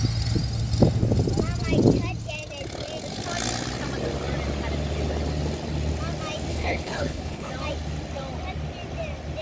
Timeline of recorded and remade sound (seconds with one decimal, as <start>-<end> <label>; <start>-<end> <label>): 0.0-6.5 recorded; 6.5-7.5 remade; 7.5-9.4 recorded